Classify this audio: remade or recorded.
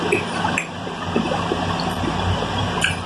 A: remade